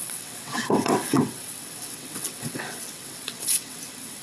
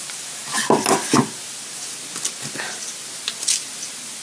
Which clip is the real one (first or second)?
second